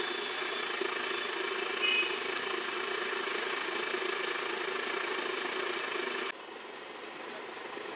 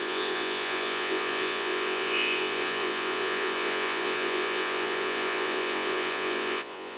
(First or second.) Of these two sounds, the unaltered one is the first